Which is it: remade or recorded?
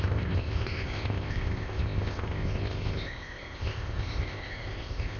remade